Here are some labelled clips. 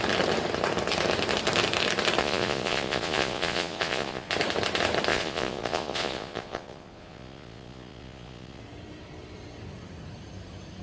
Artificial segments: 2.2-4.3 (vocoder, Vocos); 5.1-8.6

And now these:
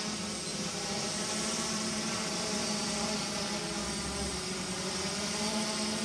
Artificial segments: 0.5-2.9 (vocoder, BigVGAN v2); 4.3-4.9